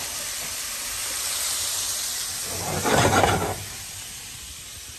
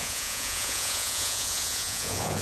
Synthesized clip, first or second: second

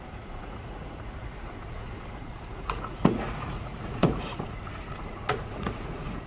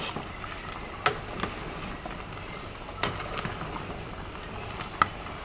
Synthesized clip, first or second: first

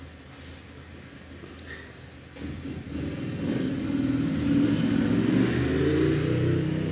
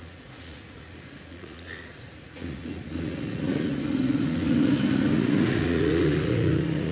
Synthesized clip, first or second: second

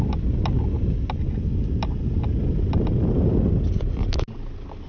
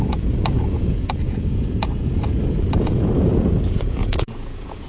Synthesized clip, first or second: second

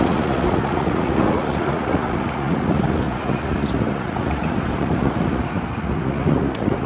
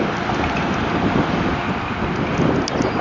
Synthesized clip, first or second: first